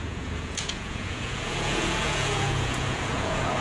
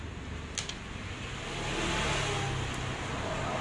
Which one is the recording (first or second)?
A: second